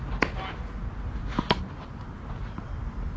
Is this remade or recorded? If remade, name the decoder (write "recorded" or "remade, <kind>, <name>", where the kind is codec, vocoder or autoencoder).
recorded